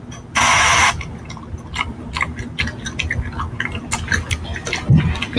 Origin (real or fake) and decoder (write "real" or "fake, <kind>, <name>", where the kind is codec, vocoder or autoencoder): real